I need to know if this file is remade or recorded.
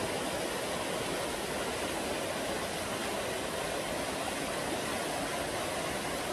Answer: recorded